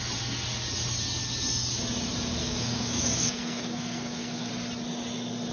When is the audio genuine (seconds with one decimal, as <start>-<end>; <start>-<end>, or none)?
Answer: 0.0-2.4; 4.5-5.5